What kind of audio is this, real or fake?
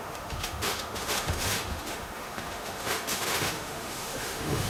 fake